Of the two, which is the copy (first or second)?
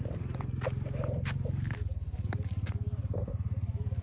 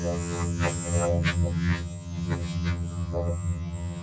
second